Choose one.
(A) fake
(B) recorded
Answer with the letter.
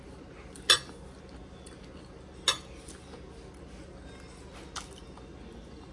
B